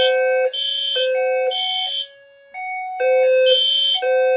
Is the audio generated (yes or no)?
no